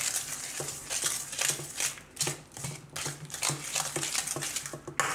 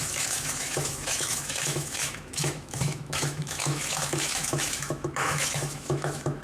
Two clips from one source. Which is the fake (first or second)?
second